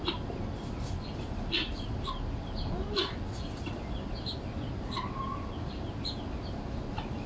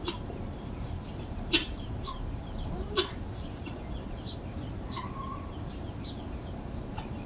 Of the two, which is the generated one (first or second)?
second